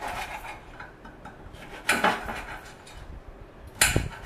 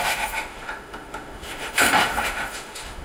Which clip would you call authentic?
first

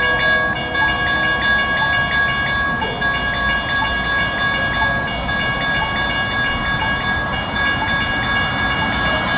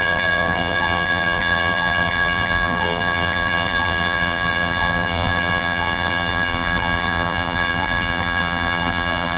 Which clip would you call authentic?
first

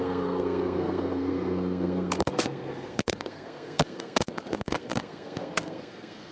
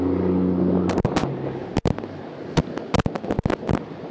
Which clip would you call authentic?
second